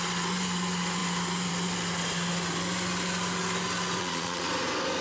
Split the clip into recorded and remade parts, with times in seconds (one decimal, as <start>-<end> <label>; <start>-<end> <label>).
0.0-4.0 recorded; 4.0-4.5 remade; 4.5-5.0 recorded